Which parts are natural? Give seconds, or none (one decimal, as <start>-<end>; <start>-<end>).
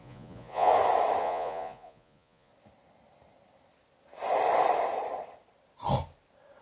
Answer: 0.7-1.2; 2.5-6.6